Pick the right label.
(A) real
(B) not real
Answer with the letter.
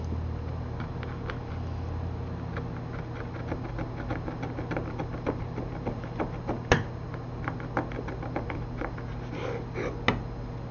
A